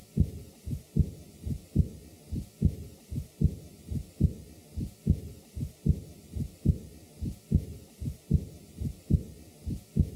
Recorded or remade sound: recorded